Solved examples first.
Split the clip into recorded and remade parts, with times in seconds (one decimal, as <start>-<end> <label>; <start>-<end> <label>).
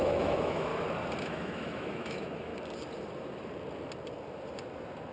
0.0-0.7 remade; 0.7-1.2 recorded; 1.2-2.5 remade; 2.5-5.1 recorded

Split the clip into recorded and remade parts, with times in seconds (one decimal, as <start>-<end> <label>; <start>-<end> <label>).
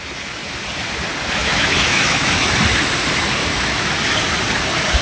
0.0-1.4 recorded; 1.4-2.5 remade; 2.5-3.4 recorded; 3.4-3.9 remade; 3.9-5.0 recorded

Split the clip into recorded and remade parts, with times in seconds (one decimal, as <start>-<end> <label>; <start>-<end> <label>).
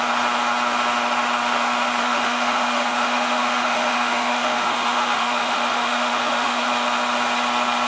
0.0-2.0 recorded; 2.0-6.7 remade; 6.7-7.9 recorded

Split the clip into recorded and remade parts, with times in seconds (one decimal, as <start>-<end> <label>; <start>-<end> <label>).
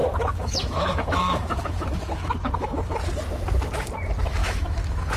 0.0-3.1 remade; 3.1-4.4 recorded; 4.4-5.2 remade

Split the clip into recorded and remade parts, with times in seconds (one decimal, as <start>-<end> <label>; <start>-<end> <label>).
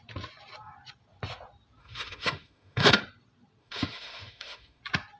0.0-1.8 recorded; 1.8-3.0 remade; 3.0-3.6 recorded; 3.6-4.8 remade; 4.8-5.2 recorded